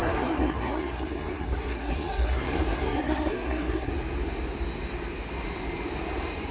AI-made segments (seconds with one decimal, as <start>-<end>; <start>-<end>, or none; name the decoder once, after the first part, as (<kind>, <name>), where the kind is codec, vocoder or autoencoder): 0.0-3.9 (codec, SNAC)